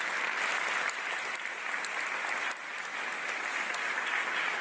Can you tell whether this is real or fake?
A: real